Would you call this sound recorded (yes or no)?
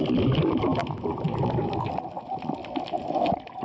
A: yes